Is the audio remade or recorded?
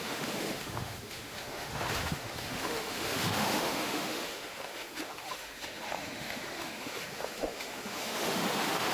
remade